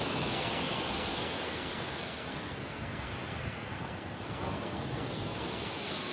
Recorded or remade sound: remade